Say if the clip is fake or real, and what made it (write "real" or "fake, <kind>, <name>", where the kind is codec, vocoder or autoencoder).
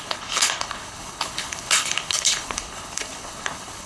fake, codec, HILCodec